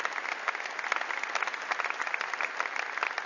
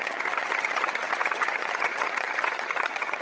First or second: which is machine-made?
second